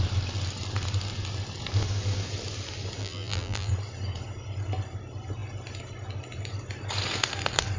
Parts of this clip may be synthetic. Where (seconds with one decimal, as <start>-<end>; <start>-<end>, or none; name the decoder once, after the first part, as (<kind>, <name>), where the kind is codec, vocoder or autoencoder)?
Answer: 3.0-3.7 (vocoder, BigVGAN v2)